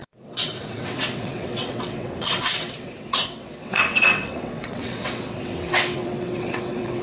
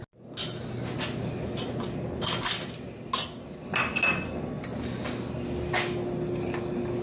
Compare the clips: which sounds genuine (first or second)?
second